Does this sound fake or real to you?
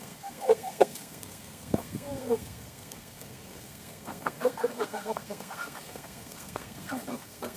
fake